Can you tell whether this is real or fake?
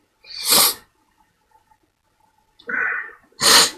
real